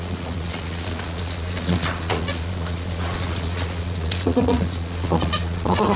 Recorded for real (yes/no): no